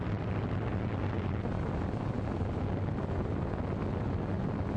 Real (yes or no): yes